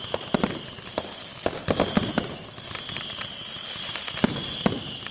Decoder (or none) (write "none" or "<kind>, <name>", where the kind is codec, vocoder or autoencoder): none